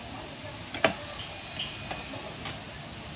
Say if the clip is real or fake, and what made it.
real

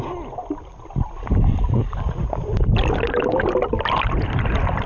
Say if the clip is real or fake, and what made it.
real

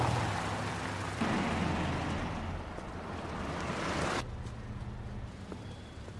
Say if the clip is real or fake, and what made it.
real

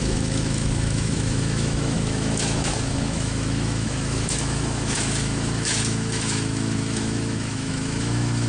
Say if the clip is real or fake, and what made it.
fake, autoencoder, DAC-VAE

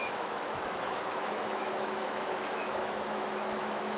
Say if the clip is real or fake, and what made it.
fake, autoencoder, DAC-VAE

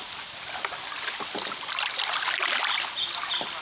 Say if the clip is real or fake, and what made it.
real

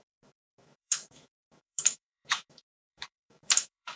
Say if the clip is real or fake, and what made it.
fake, autoencoder, DAC-VAE